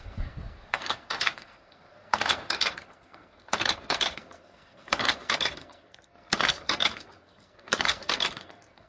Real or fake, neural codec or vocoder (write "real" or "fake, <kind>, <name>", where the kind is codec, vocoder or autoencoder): fake, codec, SNAC